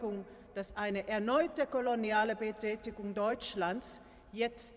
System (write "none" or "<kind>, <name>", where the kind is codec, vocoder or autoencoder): vocoder, BigVGAN v2